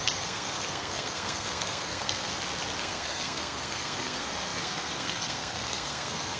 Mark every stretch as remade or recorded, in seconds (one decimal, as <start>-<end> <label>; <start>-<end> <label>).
0.0-2.3 remade; 2.3-2.8 recorded; 2.8-6.4 remade